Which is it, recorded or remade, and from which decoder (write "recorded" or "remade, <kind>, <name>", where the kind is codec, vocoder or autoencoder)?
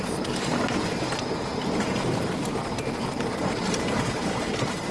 remade, vocoder, BigVGAN v2